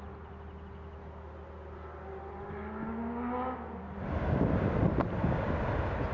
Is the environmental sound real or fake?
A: real